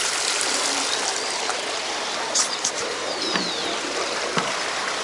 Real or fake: fake